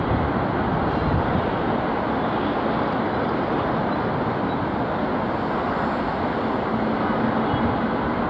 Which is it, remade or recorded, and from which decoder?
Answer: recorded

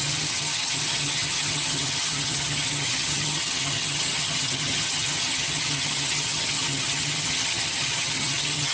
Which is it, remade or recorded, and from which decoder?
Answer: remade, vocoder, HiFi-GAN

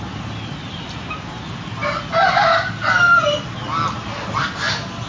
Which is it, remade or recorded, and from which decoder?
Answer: recorded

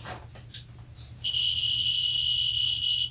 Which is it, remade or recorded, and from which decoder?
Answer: recorded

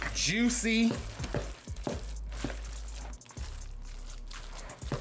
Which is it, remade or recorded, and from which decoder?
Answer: recorded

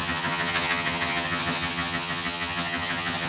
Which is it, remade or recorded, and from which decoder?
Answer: remade, vocoder, HiFi-GAN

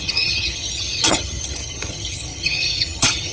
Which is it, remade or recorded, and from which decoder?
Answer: remade, vocoder, HiFi-GAN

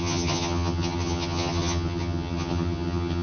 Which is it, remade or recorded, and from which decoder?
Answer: remade, vocoder, HiFi-GAN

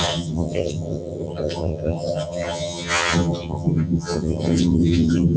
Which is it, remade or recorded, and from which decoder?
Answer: remade, vocoder, HiFi-GAN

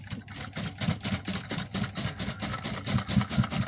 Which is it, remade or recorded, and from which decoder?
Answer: recorded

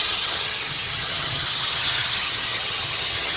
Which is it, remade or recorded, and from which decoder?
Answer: remade, vocoder, HiFi-GAN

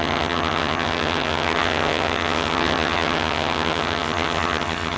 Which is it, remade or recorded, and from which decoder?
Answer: remade, vocoder, HiFi-GAN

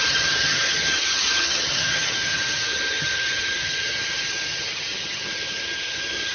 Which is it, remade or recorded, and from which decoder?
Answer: remade, vocoder, HiFi-GAN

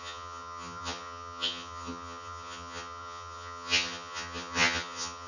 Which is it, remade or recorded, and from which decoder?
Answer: remade, vocoder, HiFi-GAN